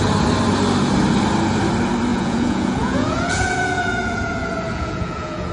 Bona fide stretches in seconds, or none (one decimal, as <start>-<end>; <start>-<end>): 0.0-2.1